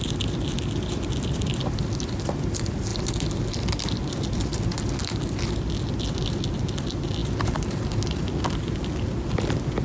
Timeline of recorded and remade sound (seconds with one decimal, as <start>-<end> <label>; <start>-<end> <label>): 0.0-9.8 recorded